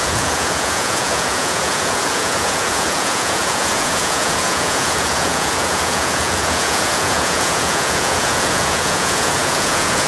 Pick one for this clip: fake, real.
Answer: fake